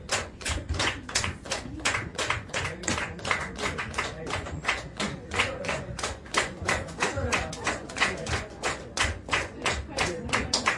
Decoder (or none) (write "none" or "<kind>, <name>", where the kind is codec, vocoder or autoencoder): vocoder, Vocos